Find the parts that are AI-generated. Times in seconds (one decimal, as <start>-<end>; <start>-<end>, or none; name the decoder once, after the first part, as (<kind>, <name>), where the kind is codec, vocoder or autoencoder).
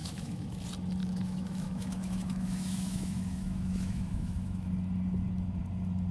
0.0-0.6 (autoencoder, DAC-VAE); 1.0-4.7